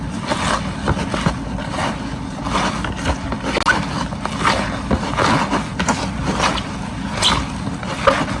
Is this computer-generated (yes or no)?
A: no